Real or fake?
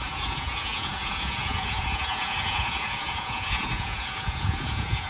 fake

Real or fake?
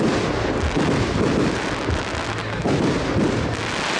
real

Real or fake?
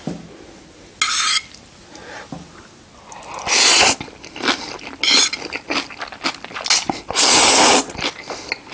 real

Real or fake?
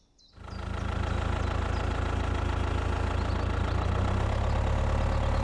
real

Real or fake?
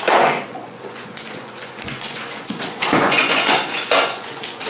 fake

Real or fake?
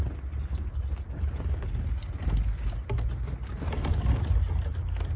real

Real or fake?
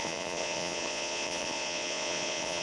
fake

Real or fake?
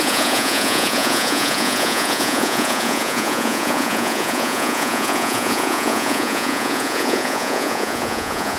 fake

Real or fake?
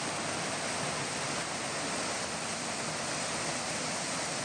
real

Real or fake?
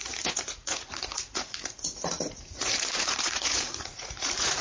fake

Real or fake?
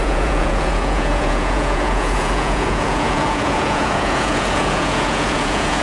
fake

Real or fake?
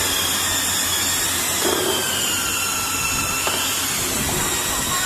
real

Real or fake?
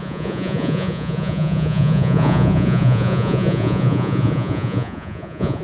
fake